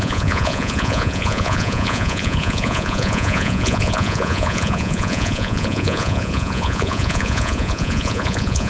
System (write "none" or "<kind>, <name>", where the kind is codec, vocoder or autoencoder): vocoder, Vocos